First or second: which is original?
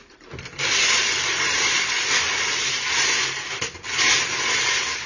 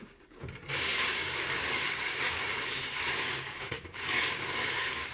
first